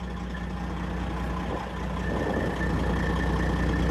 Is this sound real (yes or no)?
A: yes